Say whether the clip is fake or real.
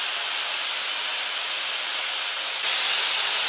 real